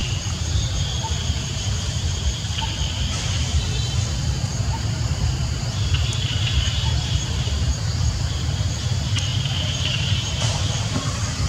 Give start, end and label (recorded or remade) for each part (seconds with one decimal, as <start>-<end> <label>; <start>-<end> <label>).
0.0-2.6 remade; 2.6-4.5 recorded; 4.5-8.5 remade; 8.5-9.3 recorded; 9.3-10.6 remade; 10.6-11.5 recorded

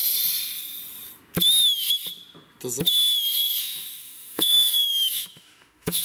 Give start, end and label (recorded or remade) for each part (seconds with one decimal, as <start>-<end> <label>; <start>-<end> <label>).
0.0-3.6 recorded; 3.6-6.0 remade

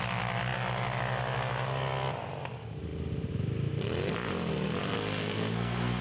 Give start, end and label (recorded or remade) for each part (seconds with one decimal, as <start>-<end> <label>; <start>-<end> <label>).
0.0-4.8 recorded; 4.8-6.0 remade

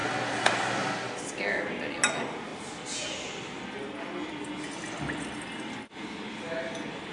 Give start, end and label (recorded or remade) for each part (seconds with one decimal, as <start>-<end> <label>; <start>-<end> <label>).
0.0-7.1 recorded